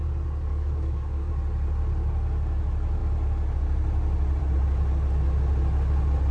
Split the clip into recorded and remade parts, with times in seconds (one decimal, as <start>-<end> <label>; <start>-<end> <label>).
0.0-0.5 recorded; 0.5-1.3 remade; 1.3-6.3 recorded